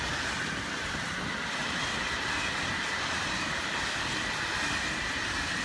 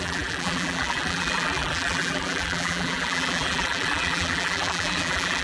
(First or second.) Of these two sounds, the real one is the first